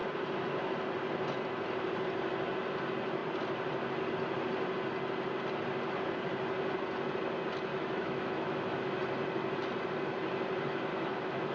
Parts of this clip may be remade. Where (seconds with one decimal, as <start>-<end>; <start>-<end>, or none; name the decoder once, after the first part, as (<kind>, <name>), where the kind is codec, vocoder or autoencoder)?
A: 7.7-8.8 (autoencoder, DAC-VAE); 10.9-11.5